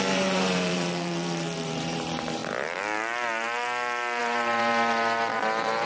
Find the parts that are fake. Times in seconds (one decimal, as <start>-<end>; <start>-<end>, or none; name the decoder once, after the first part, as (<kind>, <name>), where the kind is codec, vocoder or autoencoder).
0.0-2.4 (vocoder, BigVGAN v2); 4.2-5.9